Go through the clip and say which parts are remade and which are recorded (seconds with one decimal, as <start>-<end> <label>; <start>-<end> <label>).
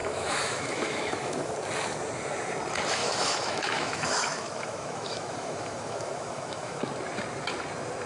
0.0-1.5 remade; 1.5-3.0 recorded; 3.0-6.8 remade; 6.8-8.1 recorded